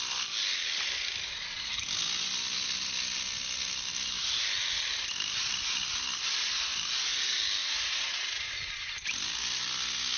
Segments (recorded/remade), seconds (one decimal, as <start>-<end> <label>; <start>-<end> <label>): 0.0-7.6 recorded; 7.6-8.5 remade; 8.5-10.2 recorded